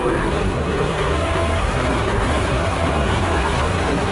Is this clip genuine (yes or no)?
no